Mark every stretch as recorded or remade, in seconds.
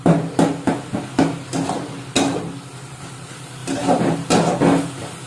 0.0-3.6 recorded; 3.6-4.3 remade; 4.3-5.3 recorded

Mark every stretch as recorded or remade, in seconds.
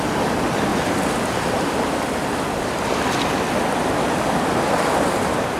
0.0-0.7 remade; 0.7-4.1 recorded; 4.1-5.6 remade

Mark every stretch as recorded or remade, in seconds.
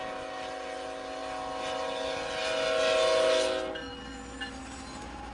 0.0-5.3 recorded